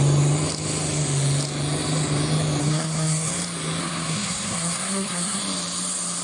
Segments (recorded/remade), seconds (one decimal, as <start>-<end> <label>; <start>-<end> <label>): 0.0-2.6 recorded; 2.6-3.3 remade; 3.3-3.8 recorded; 3.8-5.4 remade; 5.4-6.2 recorded